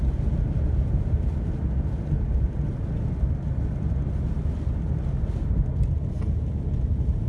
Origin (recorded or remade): recorded